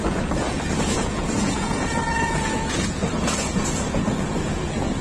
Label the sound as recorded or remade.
remade